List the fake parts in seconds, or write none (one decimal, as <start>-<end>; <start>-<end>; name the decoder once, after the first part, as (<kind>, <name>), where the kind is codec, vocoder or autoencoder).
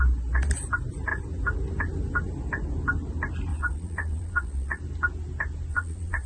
3.5-4.8 (vocoder, Vocos); 5.7-6.3